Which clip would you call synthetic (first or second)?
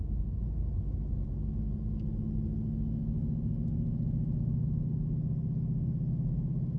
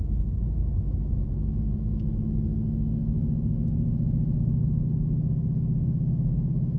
second